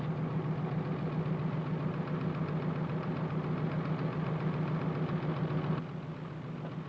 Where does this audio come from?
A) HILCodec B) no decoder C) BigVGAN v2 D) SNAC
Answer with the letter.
B